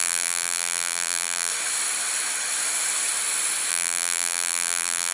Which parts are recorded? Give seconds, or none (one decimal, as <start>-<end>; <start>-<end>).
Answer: 1.5-3.7